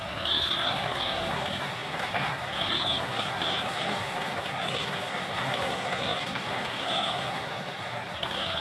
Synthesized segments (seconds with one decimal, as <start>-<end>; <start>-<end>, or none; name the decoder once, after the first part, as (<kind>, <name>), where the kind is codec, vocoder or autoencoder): 0.0-8.6 (codec, SNAC)